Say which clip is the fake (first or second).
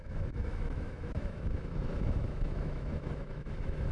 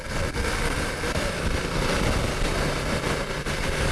first